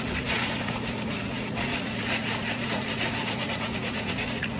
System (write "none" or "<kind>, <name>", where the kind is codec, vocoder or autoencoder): vocoder, Vocos